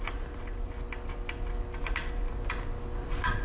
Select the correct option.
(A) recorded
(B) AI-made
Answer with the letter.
A